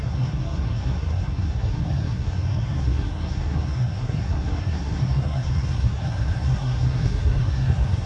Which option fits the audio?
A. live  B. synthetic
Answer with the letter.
B